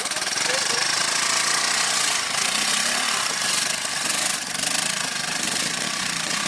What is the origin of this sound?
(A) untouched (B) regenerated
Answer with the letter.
A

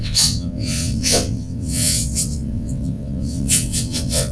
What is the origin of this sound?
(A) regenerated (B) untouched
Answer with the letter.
A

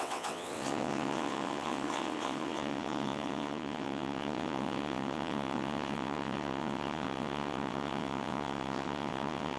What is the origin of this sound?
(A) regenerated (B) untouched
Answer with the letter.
A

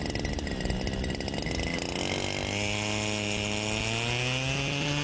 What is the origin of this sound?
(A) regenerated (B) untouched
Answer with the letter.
B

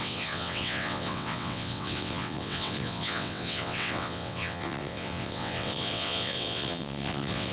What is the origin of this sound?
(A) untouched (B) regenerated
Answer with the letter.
B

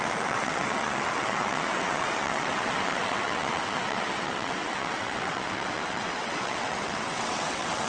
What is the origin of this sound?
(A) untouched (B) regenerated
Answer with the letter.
B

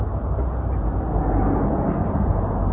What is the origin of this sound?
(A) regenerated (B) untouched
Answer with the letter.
B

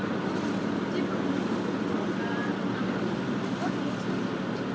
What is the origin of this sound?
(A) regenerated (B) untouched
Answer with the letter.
B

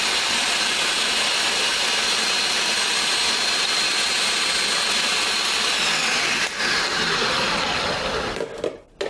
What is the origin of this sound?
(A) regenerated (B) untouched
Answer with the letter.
B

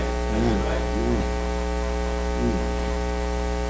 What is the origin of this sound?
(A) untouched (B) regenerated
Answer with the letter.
A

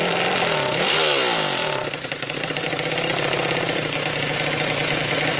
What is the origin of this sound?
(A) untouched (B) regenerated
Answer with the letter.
A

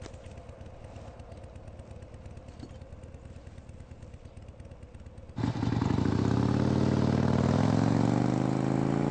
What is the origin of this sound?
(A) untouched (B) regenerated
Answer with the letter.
A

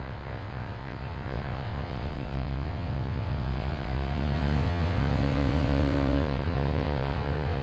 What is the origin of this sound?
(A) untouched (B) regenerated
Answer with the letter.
B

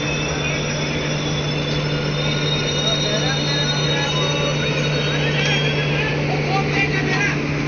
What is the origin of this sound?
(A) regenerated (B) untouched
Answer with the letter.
B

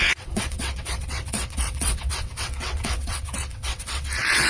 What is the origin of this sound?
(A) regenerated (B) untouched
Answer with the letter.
A